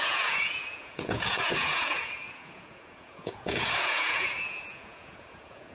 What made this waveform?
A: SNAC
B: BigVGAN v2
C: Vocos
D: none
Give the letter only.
C